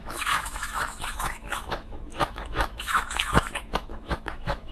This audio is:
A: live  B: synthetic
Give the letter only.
B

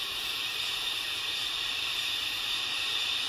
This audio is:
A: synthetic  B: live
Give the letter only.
A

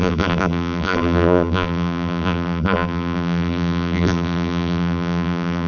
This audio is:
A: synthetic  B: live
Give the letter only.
A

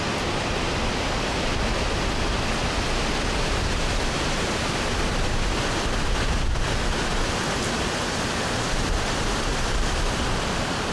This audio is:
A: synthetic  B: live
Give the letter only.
B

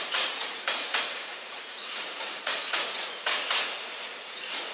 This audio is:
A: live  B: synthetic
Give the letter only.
B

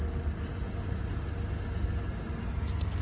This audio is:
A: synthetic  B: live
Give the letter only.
B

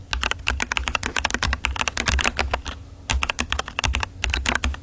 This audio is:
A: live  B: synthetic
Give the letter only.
A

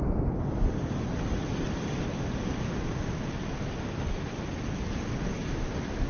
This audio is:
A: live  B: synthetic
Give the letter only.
A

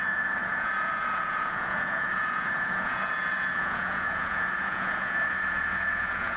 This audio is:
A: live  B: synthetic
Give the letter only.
B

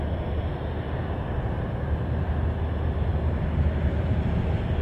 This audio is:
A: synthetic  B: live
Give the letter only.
B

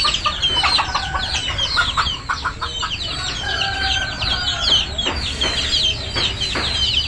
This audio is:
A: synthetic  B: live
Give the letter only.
B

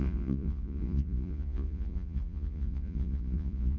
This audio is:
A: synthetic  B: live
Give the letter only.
A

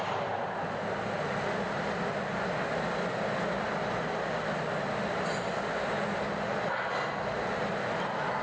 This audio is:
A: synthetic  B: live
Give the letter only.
B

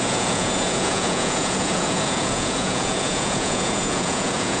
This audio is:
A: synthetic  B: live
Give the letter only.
A